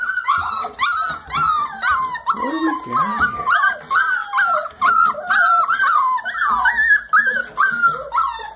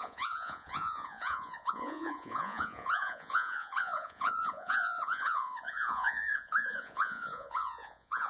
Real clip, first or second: first